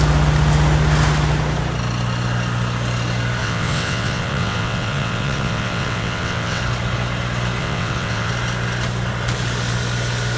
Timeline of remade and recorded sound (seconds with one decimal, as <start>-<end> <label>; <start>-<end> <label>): 0.0-3.4 recorded; 3.4-6.6 remade; 6.6-7.6 recorded; 7.6-8.3 remade; 8.3-10.4 recorded